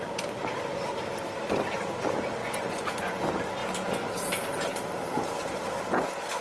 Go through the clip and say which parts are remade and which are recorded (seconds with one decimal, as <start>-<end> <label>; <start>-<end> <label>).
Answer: 0.0-2.4 recorded; 2.4-3.2 remade; 3.2-6.4 recorded